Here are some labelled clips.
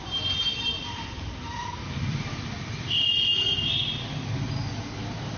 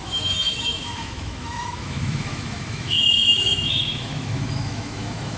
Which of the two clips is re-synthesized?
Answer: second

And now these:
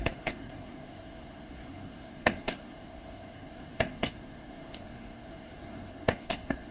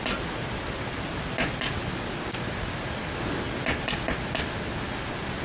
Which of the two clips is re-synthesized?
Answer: first